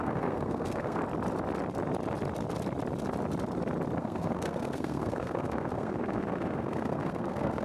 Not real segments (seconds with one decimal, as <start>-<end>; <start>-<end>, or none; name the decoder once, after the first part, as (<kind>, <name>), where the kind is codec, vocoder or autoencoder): 0.0-1.0 (codec, SNAC); 4.0-7.6